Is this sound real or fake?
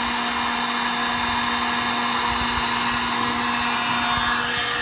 real